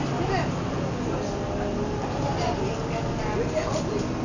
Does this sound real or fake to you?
real